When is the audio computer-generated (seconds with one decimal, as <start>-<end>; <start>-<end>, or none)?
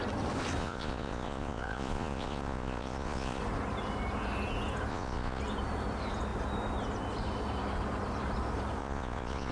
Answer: 0.6-3.4; 4.9-5.4; 8.8-9.5